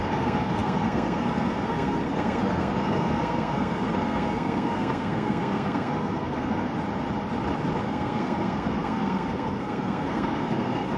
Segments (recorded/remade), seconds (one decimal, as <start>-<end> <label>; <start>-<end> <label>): 0.0-6.7 remade; 6.7-7.8 recorded; 7.8-11.0 remade